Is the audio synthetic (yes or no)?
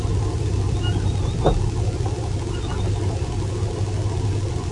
no